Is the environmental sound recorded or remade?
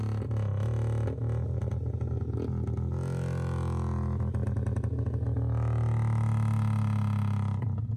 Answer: recorded